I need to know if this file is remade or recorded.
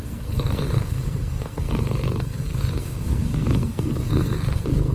remade